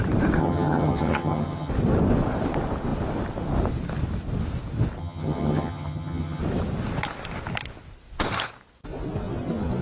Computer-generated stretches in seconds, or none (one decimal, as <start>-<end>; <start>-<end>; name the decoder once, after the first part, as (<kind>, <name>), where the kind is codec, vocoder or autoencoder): 0.4-1.7 (vocoder, HiFi-GAN); 5.0-6.4